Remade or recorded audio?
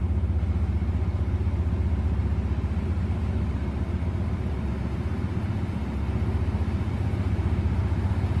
recorded